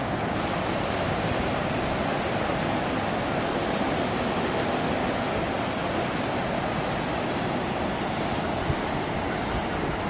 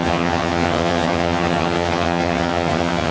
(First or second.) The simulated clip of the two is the second